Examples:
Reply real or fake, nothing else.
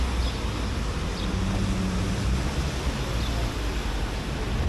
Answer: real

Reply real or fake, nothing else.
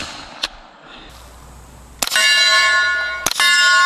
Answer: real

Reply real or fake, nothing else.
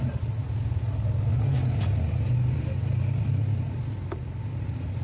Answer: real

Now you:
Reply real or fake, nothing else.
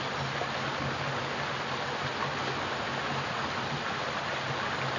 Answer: real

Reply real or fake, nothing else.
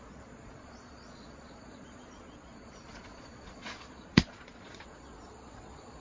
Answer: fake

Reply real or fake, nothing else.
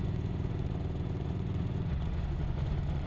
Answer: fake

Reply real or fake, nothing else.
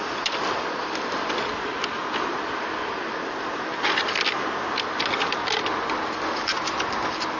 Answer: real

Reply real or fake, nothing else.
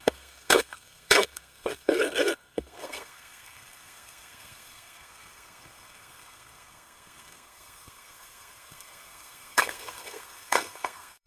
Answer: fake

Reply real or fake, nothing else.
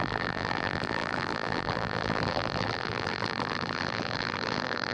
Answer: fake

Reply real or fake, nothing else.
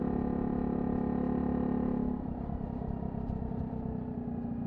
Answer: real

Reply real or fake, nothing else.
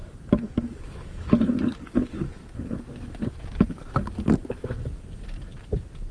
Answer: fake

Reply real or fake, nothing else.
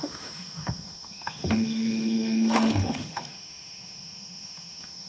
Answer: fake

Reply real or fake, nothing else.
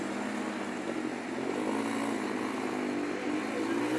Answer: real